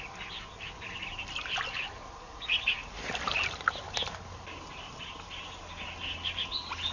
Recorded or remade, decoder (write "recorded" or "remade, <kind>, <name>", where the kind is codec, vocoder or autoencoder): recorded